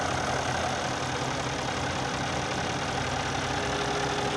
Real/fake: real